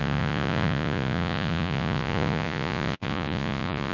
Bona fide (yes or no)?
no